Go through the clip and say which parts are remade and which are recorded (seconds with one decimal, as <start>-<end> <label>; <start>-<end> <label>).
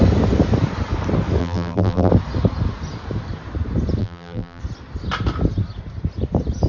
0.0-1.4 recorded; 1.4-2.1 remade; 2.1-4.0 recorded; 4.0-4.6 remade; 4.6-6.7 recorded